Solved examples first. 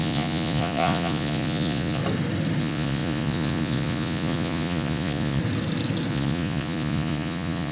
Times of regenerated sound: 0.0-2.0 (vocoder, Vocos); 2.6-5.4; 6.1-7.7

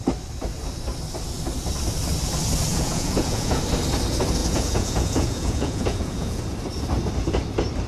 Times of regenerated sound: 2.7-3.6 (vocoder, Vocos); 4.4-6.4

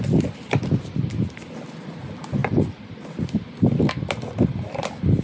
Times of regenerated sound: none

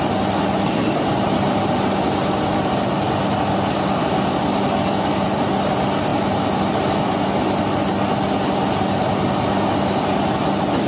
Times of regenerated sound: none

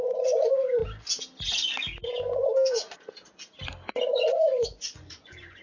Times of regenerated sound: 0.0-0.8 (vocoder, Vocos); 4.2-5.6